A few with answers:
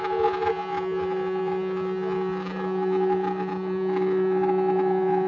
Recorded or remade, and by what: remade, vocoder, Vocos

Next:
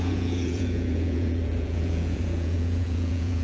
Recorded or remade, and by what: remade, vocoder, Vocos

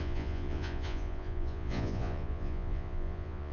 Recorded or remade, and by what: remade, vocoder, Vocos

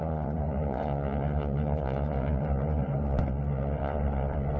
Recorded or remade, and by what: remade, vocoder, Vocos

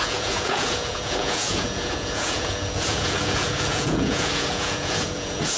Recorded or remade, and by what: remade, vocoder, Vocos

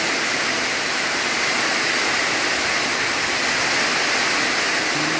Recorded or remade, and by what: recorded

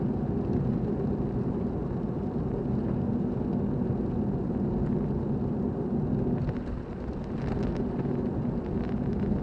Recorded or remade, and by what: recorded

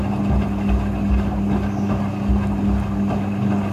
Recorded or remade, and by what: recorded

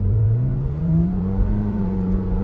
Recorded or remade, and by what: remade, vocoder, Vocos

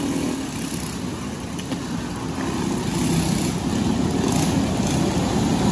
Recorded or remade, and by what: recorded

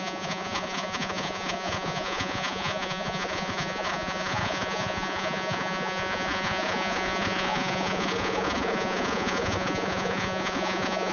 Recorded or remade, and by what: remade, vocoder, Vocos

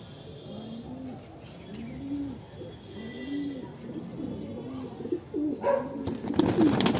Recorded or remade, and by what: recorded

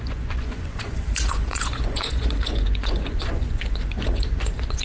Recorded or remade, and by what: remade, vocoder, Vocos